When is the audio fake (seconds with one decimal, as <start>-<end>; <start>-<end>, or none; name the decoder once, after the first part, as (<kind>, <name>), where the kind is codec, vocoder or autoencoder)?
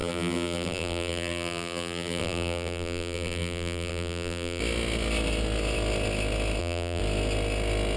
0.0-4.6 (vocoder, BigVGAN v2); 6.6-7.0